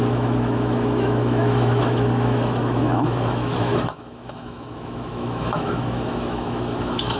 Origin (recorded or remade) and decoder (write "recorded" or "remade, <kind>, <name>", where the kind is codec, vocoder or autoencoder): remade, autoencoder, DAC-VAE